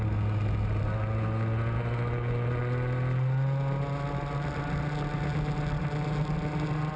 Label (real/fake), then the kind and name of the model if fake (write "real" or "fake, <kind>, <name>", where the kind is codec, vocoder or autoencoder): real